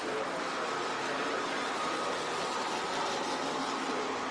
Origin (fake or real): real